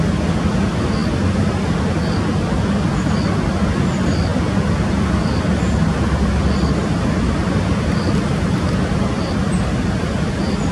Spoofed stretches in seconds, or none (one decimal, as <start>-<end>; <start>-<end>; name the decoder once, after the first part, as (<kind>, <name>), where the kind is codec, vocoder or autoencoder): none